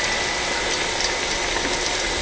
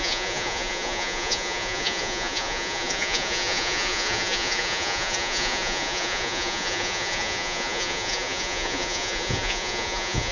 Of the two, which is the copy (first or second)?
second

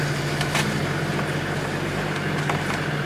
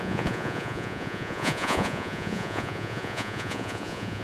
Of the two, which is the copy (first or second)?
second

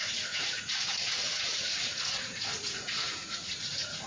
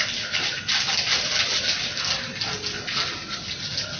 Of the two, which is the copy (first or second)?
first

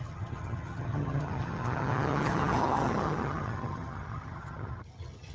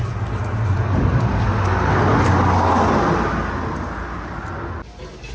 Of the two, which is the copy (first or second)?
first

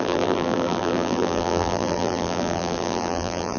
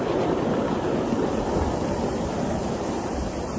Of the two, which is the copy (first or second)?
first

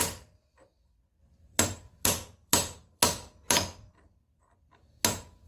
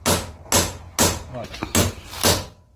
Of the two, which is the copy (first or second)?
first